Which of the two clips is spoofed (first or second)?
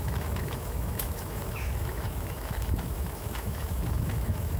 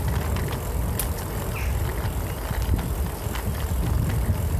first